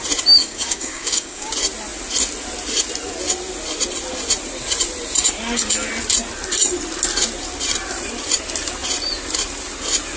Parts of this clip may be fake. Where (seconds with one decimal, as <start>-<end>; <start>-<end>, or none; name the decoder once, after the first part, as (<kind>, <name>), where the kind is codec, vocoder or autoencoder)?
0.4-1.5 (codec, DAC)